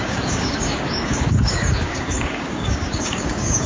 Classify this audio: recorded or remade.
remade